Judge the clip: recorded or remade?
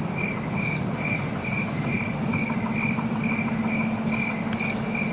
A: recorded